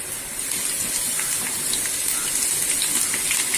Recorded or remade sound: recorded